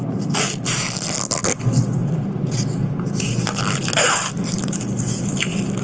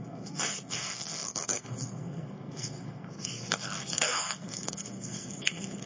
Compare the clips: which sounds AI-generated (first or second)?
second